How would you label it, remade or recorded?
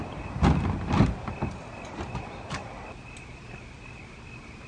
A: recorded